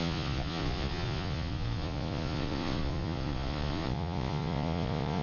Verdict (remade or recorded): remade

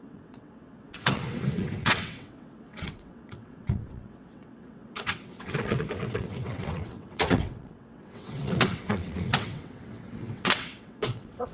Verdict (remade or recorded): remade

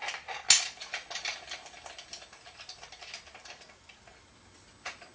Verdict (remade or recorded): recorded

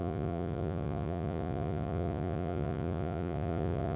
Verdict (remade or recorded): remade